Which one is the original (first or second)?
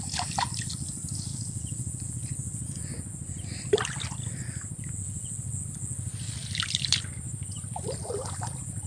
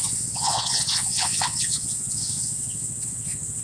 first